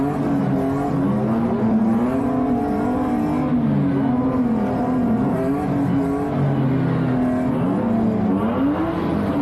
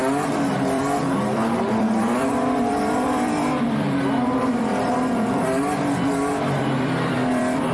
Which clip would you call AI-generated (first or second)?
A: second